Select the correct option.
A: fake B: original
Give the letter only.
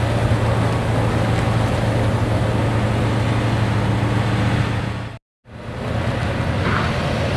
B